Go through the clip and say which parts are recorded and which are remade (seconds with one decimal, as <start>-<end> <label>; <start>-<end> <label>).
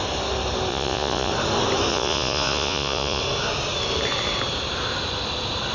0.0-0.7 recorded; 0.7-1.3 remade; 1.3-1.9 recorded; 1.9-3.2 remade; 3.2-5.7 recorded